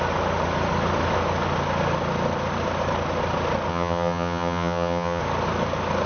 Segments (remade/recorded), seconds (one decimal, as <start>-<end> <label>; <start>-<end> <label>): 0.0-3.7 recorded; 3.7-5.2 remade; 5.2-6.1 recorded

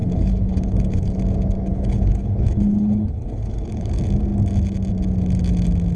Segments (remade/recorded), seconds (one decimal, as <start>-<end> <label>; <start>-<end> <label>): 0.0-1.2 remade; 1.2-1.7 recorded; 1.7-3.9 remade; 3.9-6.0 recorded

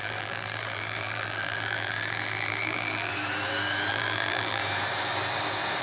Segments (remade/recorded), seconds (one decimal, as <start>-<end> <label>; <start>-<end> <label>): 0.0-3.1 remade; 3.1-3.9 recorded; 3.9-4.6 remade; 4.6-5.8 recorded

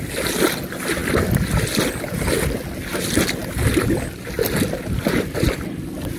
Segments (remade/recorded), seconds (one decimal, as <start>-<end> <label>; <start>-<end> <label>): 0.0-6.2 recorded

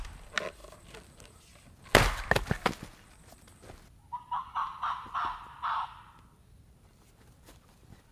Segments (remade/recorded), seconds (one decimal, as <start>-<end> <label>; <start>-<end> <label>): 0.0-4.7 recorded; 4.7-6.0 remade; 6.0-8.1 recorded

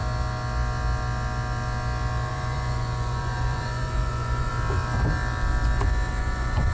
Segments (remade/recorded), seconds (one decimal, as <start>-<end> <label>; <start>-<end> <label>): 0.0-2.3 recorded; 2.3-4.5 remade; 4.5-6.2 recorded; 6.2-6.7 remade

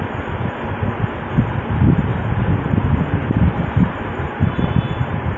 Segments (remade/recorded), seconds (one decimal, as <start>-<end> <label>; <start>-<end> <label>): 0.0-5.4 recorded